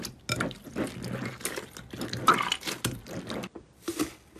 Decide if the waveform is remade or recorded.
recorded